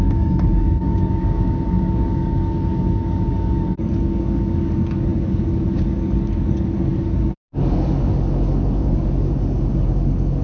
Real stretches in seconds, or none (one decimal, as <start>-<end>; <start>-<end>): none